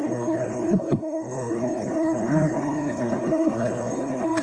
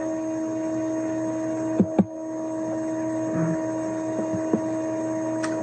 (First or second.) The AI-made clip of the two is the first